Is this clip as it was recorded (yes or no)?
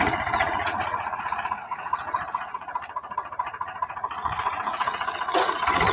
no